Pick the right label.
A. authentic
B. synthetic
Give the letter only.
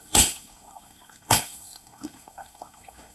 B